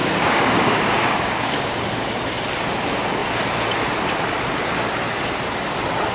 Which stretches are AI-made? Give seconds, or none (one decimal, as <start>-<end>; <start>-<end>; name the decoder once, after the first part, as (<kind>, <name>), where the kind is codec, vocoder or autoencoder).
0.0-1.7 (codec, DAC)